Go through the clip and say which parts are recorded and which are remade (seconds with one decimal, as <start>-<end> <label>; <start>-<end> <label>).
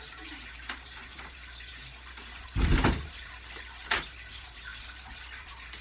0.0-5.8 remade